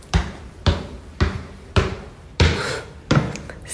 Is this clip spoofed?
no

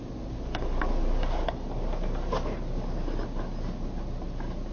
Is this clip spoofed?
no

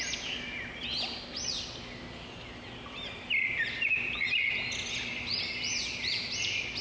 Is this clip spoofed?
no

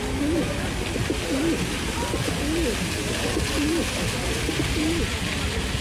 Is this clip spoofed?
no